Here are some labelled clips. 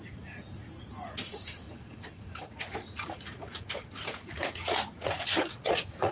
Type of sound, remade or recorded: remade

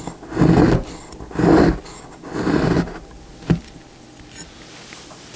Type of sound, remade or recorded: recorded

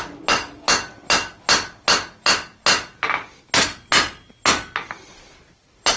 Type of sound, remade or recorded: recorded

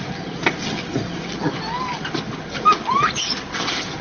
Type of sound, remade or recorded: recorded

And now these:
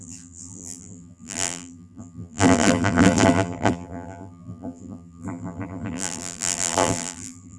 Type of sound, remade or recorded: remade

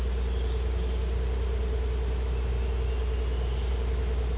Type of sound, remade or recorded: recorded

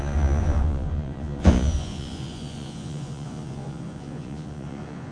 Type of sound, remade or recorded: remade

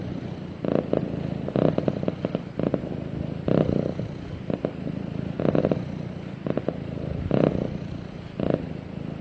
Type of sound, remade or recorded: recorded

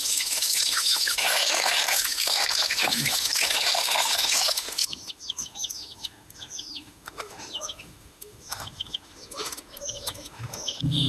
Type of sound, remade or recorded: remade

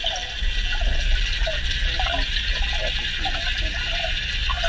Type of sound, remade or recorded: recorded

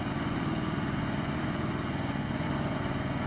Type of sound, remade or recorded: remade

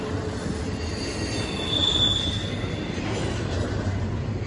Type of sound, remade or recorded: recorded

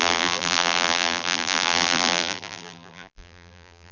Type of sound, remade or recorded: remade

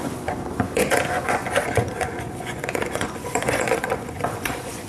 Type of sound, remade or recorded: remade